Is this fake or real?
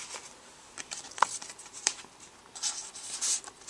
real